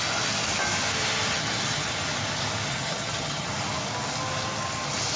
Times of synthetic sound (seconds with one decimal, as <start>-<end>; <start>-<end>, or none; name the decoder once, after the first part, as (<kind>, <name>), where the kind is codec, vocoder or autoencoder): 1.3-1.9 (vocoder, HiFi-GAN); 2.7-3.5

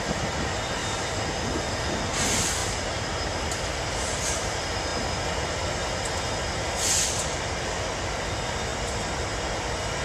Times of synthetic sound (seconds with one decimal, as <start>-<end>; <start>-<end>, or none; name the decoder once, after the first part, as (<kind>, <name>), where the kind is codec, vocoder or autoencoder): none